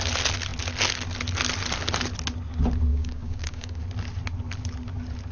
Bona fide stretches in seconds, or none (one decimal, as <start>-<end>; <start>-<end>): 0.0-2.9; 3.8-5.3